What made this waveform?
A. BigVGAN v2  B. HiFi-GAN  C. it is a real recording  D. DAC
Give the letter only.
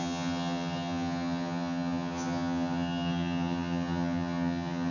B